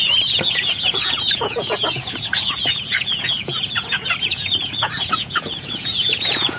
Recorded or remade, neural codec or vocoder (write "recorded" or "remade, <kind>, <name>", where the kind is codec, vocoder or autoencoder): remade, vocoder, Vocos